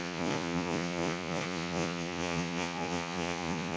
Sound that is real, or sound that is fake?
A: fake